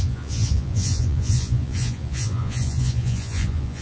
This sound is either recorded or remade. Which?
remade